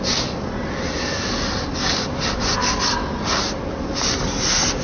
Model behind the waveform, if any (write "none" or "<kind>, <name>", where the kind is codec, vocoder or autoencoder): none